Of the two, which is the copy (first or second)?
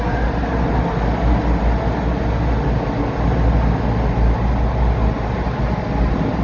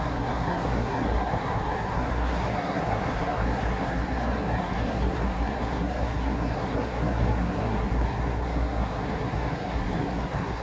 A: second